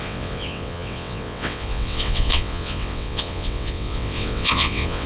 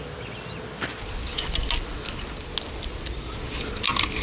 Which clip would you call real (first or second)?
second